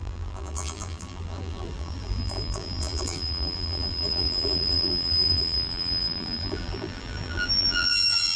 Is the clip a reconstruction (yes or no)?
yes